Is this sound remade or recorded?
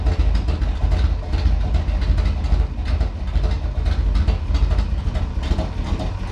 recorded